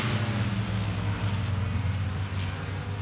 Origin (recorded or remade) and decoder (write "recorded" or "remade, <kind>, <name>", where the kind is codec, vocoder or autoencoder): recorded